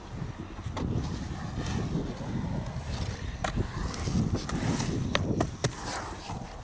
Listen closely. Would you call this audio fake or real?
real